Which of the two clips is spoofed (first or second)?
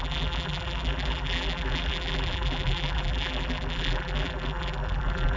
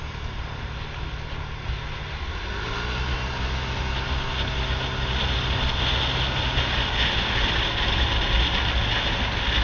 first